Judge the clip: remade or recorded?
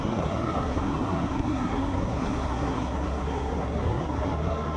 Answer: remade